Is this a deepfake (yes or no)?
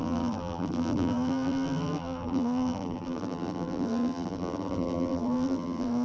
yes